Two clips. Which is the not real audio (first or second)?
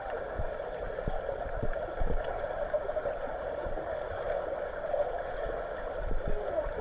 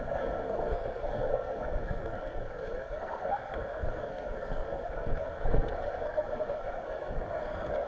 second